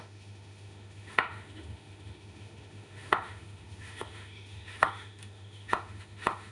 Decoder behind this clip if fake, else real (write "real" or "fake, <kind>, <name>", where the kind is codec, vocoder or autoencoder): fake, autoencoder, DAC-VAE